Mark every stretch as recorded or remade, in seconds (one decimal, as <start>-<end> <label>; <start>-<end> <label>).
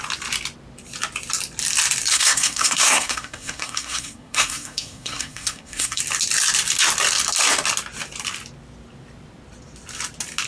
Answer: 0.0-2.1 recorded; 2.1-6.0 remade; 6.0-10.5 recorded